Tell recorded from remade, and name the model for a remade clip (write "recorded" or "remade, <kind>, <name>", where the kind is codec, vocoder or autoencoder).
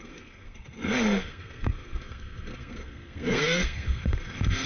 remade, codec, SNAC